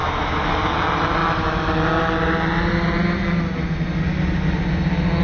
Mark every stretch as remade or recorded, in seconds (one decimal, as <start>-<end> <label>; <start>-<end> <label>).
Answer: 0.0-0.5 remade; 0.5-5.2 recorded